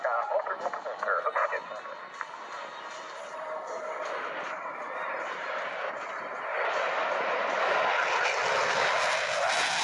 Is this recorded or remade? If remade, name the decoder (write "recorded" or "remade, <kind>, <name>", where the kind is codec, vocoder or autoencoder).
recorded